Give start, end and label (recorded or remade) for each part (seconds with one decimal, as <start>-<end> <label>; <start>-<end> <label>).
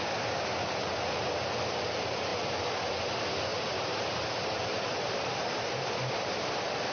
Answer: 0.0-3.5 recorded; 3.5-6.4 remade; 6.4-6.9 recorded